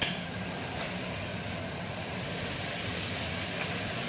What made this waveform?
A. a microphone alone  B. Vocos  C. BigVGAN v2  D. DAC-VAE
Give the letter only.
A